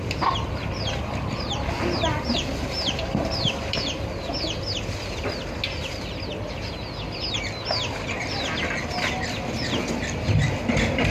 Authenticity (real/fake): real